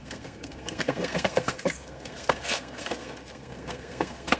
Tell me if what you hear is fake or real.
fake